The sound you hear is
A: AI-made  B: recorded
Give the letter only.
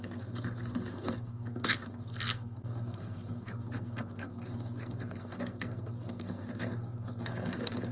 A